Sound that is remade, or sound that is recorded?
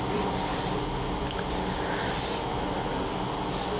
recorded